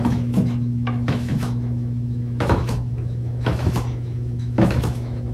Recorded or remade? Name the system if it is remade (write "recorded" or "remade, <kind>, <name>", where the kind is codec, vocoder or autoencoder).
remade, autoencoder, DAC-VAE